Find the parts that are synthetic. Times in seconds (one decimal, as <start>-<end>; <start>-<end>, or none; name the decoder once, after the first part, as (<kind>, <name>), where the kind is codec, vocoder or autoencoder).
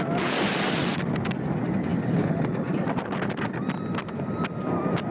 1.9-4.5 (vocoder, BigVGAN v2)